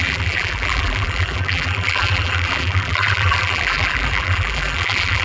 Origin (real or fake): fake